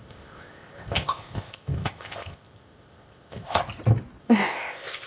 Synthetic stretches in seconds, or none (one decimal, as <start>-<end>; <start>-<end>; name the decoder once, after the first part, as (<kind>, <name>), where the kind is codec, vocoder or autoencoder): 0.0-3.6 (codec, ZipCodec); 4.2-5.1